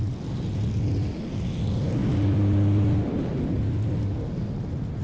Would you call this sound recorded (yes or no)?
yes